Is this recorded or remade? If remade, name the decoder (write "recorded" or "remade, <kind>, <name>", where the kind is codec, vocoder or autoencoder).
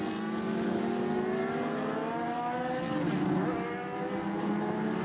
recorded